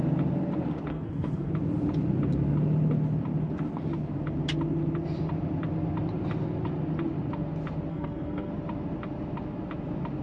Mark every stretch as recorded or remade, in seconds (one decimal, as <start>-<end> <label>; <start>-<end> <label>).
0.0-0.9 recorded; 0.9-1.5 remade; 1.5-7.9 recorded; 7.9-8.5 remade; 8.5-10.2 recorded